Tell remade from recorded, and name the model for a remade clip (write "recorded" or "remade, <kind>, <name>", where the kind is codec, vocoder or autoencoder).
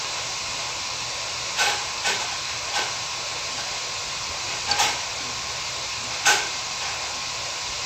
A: remade, vocoder, BigVGAN v2